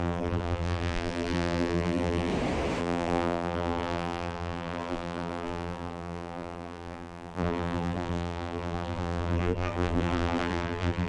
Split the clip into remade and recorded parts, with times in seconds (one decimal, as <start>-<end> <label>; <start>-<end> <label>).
0.0-2.3 remade; 2.3-2.8 recorded; 2.8-11.1 remade